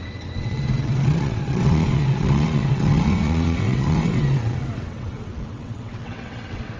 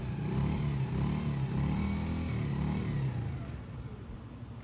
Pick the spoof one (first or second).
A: first